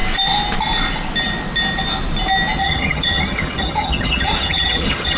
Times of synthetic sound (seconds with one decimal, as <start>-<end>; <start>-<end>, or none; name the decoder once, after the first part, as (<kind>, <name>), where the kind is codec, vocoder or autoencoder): 2.6-5.2 (vocoder, HiFi-GAN)

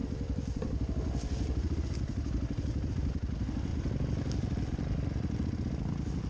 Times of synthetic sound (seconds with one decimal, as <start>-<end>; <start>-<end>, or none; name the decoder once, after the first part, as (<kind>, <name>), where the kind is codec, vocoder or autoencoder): none

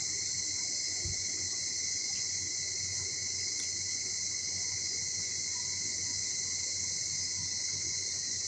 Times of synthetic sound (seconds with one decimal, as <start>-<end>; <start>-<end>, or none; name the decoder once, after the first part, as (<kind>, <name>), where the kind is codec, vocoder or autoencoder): 0.9-6.2 (vocoder, Vocos); 6.9-8.5

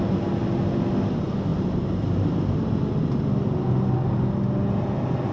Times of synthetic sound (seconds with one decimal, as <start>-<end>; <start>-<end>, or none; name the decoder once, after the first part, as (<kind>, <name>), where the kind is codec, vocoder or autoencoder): 1.5-2.8 (vocoder, BigVGAN v2)